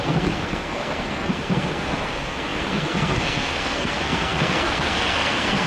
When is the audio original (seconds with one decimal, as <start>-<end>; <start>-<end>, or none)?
none